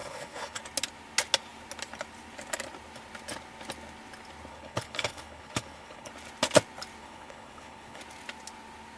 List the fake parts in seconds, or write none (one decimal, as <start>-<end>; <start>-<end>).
0.0-0.6; 4.5-6.1; 7.0-8.0